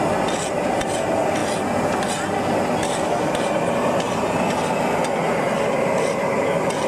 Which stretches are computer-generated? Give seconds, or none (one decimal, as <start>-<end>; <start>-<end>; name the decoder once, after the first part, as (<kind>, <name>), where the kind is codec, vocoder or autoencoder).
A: none

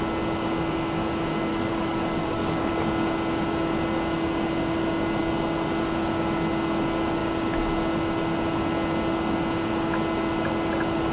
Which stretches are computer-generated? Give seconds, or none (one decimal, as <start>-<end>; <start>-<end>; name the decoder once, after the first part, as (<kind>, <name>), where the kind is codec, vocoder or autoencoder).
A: 1.5-2.7 (codec, DAC)

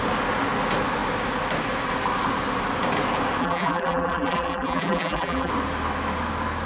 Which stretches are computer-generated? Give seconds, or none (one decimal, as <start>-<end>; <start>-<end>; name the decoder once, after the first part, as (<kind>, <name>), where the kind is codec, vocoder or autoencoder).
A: 3.4-5.5 (vocoder, BigVGAN v2)

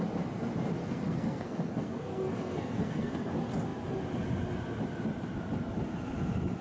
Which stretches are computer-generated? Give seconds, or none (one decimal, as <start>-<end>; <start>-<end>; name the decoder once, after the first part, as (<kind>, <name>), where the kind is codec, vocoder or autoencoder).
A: 0.8-3.3 (codec, SNAC)

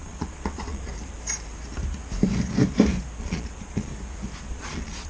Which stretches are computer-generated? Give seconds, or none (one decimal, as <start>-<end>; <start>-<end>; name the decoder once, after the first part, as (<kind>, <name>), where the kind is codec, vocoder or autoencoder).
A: 0.0-0.9 (vocoder, Vocos); 3.2-3.9; 4.5-5.1

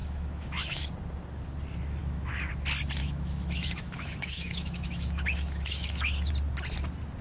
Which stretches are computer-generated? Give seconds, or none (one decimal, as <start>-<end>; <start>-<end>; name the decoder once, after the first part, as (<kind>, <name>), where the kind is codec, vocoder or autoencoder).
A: 0.0-0.9 (autoencoder, DAC-VAE); 2.0-2.5; 3.0-6.3